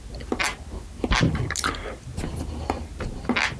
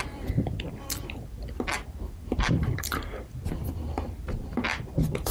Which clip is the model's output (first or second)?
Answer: second